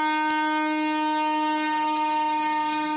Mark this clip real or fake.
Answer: real